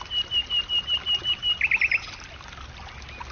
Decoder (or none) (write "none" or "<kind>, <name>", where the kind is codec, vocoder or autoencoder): none